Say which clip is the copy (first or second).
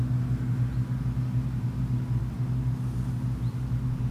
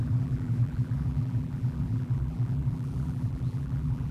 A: second